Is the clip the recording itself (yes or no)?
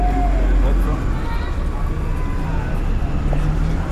yes